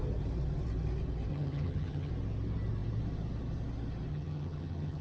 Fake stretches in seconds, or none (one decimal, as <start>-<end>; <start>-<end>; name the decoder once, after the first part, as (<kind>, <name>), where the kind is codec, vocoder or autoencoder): 1.3-2.1 (vocoder, HiFi-GAN); 4.1-5.0